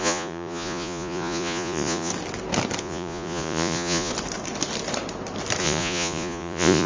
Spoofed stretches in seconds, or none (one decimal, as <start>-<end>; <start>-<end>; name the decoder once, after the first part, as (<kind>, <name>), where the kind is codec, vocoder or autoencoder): 0.0-2.1 (vocoder, Vocos); 2.8-4.1; 5.6-6.9